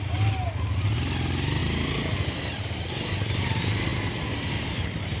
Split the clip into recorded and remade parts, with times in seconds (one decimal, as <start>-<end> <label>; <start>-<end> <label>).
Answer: 0.0-5.2 recorded